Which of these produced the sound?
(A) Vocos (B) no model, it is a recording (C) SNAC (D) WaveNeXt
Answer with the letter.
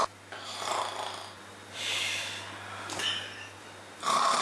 B